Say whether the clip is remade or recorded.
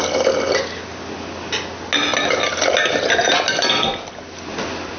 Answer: recorded